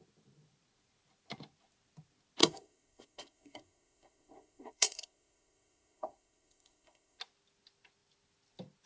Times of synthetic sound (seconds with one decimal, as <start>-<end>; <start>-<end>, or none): 2.4-7.2